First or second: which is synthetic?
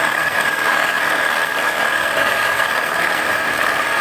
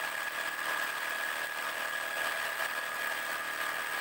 first